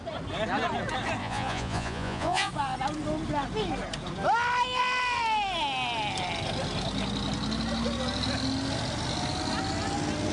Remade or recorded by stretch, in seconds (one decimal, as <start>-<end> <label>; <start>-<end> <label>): 0.0-1.2 recorded; 1.2-2.5 remade; 2.5-10.3 recorded

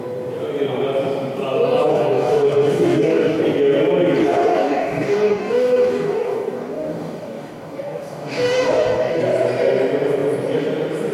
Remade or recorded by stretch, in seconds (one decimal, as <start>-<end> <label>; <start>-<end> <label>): 0.0-1.9 recorded; 1.9-3.4 remade; 3.4-4.2 recorded; 4.2-9.2 remade; 9.2-11.1 recorded

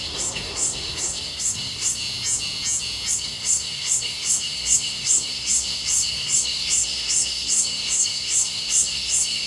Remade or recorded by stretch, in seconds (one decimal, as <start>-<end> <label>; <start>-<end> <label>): 0.0-2.0 remade; 2.0-3.1 recorded; 3.1-9.5 remade

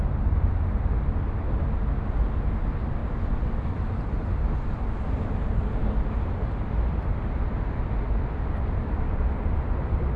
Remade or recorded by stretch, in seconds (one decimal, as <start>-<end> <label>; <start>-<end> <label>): 0.0-10.2 recorded

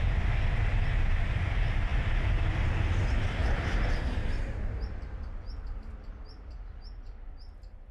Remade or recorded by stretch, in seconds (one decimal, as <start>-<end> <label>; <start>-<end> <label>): 0.0-7.9 recorded